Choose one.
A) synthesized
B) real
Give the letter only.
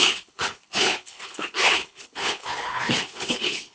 A